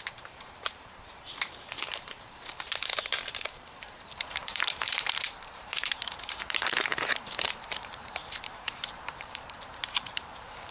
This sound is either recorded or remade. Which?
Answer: remade